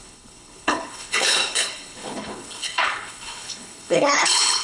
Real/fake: fake